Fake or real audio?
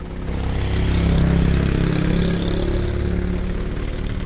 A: real